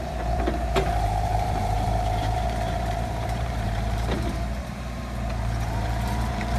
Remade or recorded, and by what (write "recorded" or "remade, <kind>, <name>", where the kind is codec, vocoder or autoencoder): remade, vocoder, BigVGAN v2